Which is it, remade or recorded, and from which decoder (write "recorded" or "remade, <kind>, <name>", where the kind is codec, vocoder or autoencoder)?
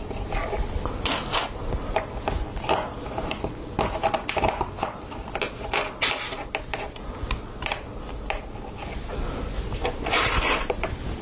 recorded